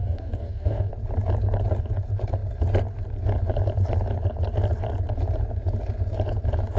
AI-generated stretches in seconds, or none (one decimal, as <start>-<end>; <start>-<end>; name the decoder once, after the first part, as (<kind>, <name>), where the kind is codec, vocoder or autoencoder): 0.0-0.9 (codec, DAC)